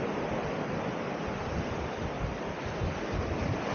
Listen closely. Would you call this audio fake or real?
real